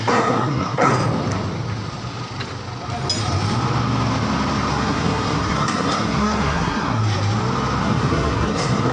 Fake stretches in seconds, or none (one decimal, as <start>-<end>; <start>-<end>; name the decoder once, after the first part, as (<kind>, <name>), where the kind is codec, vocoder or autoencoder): 0.0-0.9 (codec, SNAC); 4.7-7.0; 7.8-8.9

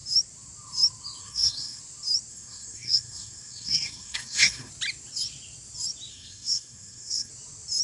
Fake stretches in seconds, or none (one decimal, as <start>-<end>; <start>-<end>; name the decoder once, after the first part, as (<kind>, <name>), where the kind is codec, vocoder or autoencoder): 1.2-1.8 (codec, SNAC); 2.3-4.7; 6.1-7.3

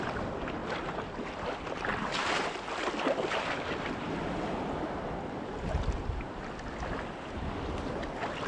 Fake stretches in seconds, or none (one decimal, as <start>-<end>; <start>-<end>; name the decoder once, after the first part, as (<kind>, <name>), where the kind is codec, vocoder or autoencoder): none